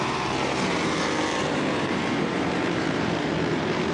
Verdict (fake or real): fake